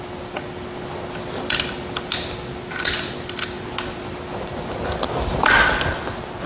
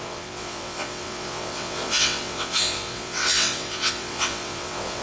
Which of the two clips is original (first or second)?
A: first